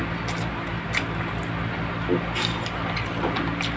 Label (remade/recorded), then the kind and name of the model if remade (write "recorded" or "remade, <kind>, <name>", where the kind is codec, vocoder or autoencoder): recorded